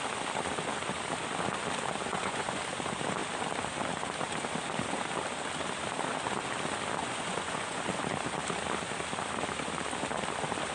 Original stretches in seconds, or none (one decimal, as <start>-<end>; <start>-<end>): 0.0-2.1; 2.6-7.0; 7.8-10.7